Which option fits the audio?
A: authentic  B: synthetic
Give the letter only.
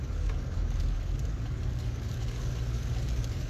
B